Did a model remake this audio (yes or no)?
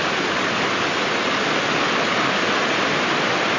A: no